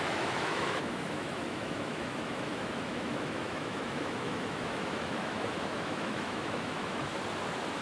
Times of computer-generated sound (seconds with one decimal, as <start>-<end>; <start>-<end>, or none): 0.0-7.1